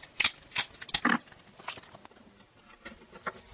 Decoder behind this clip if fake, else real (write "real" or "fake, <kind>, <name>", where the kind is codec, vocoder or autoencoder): real